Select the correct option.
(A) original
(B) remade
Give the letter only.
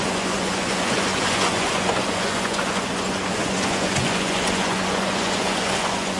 B